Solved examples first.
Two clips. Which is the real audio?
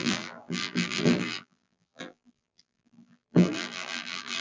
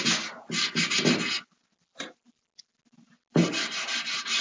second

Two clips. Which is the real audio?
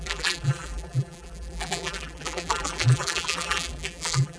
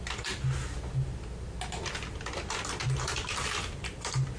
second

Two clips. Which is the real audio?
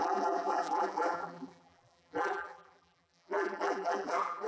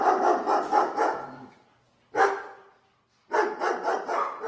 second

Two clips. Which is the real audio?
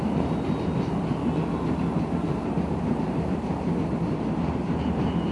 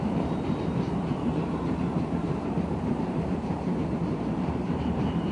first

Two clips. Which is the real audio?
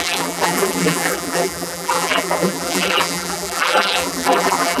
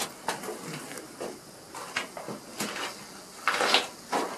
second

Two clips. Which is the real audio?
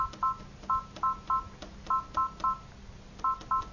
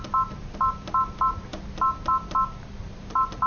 first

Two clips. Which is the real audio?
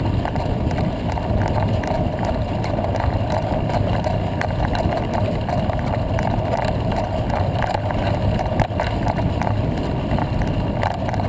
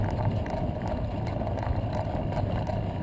second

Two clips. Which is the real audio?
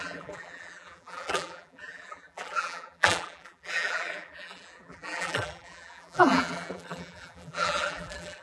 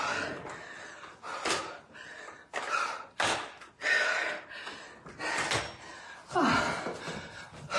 second